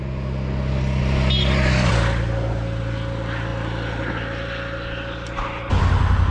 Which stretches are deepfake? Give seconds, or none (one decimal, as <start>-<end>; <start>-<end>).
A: 1.0-1.9